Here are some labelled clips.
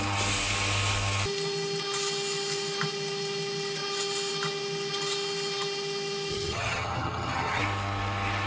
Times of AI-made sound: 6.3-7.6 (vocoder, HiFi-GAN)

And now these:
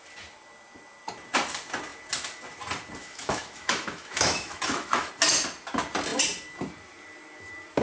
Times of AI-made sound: 3.0-5.1 (autoencoder, DAC-VAE)

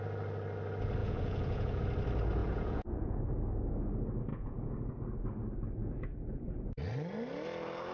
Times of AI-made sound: 1.0-1.8 (vocoder, Vocos); 2.4-3.2; 4.3-4.9; 5.8-6.7

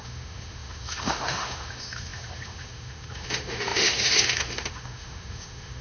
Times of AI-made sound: 0.0-5.8 (autoencoder, DAC-VAE)

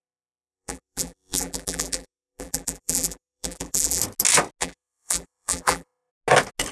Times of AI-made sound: 0.0-4.0 (vocoder, BigVGAN v2); 4.6-6.1

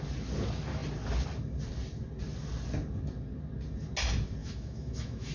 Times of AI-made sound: 4.4-5.3 (autoencoder, DAC-VAE)

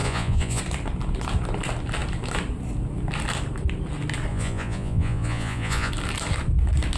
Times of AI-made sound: 0.0-0.6 (vocoder, Vocos); 4.3-5.9

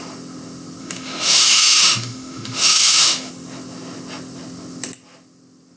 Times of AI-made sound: 0.8-3.3 (autoencoder, DAC-VAE)